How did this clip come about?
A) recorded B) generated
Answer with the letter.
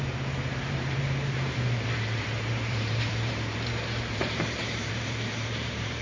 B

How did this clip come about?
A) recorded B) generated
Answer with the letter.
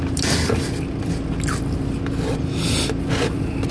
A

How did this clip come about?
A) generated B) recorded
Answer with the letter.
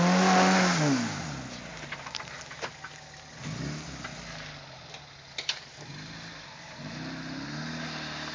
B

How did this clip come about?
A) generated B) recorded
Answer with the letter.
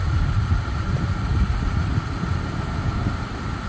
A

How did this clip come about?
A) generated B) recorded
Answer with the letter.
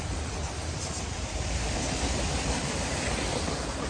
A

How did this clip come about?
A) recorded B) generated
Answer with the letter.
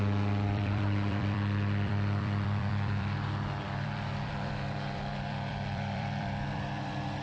B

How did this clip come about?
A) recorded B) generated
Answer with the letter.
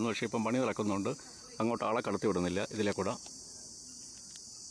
B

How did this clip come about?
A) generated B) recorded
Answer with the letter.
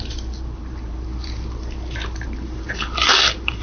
A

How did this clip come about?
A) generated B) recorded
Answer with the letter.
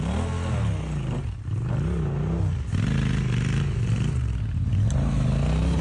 B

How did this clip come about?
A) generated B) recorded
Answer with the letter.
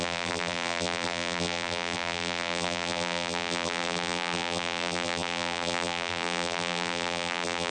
A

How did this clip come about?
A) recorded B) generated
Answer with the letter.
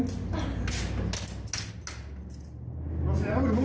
A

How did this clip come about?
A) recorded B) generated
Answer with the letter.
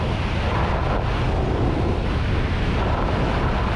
A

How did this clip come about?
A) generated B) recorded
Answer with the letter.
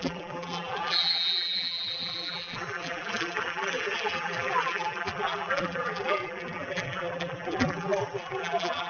A